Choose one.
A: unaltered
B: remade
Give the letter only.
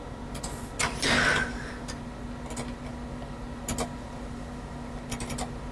A